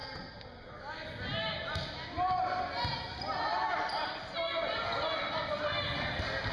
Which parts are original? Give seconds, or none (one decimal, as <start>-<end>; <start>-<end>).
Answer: 0.0-6.5